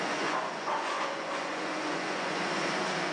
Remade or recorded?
remade